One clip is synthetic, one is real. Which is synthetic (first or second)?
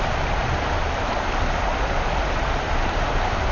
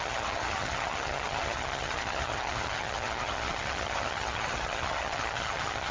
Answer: second